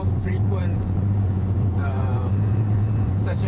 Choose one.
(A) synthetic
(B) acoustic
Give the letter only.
A